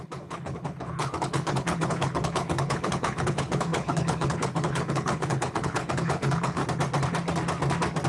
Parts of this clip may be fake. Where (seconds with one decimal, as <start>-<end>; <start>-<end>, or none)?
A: 0.0-6.6